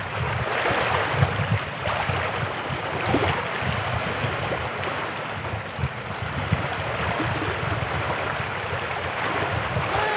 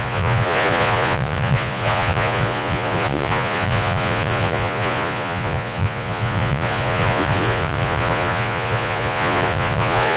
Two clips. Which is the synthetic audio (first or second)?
second